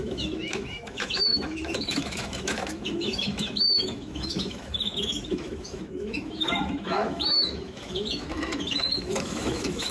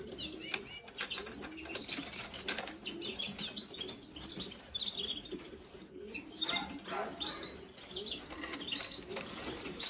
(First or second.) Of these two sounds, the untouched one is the second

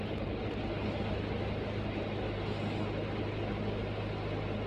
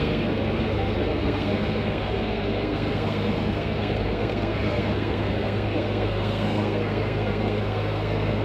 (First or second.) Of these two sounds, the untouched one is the first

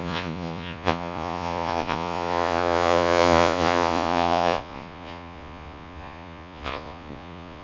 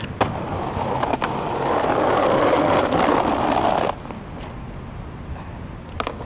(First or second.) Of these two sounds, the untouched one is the second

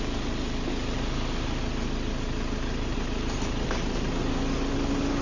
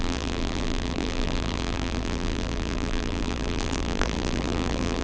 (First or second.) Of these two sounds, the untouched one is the first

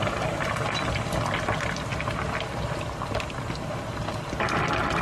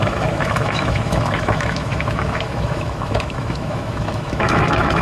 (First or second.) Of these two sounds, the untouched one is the first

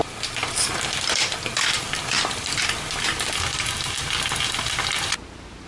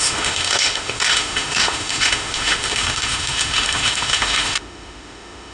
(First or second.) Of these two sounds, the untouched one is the first